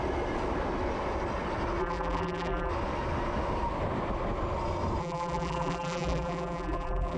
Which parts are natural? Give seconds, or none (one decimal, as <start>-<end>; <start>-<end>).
0.0-1.8; 2.7-5.0